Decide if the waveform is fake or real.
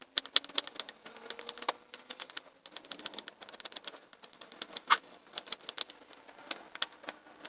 real